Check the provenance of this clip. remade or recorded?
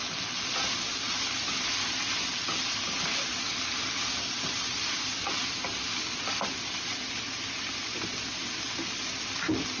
recorded